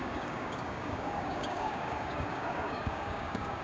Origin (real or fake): fake